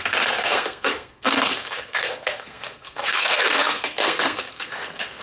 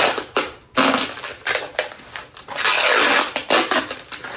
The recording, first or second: second